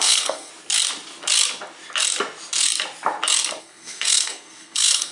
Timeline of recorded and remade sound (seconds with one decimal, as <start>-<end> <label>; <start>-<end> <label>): 0.0-0.5 remade; 0.5-3.6 recorded; 3.6-5.1 remade